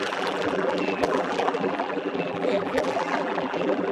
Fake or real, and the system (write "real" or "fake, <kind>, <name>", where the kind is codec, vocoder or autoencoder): fake, vocoder, BigVGAN v2